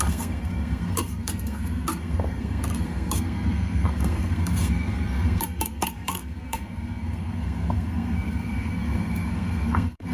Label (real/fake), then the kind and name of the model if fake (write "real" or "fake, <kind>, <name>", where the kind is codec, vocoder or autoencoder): fake, codec, SNAC